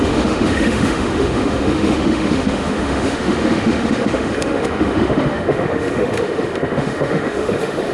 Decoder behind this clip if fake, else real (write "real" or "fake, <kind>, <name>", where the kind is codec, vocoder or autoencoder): fake, autoencoder, DAC-VAE